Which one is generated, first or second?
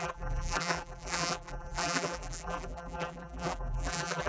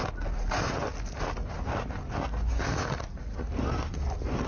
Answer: first